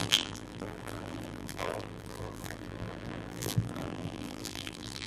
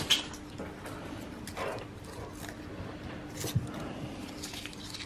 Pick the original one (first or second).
second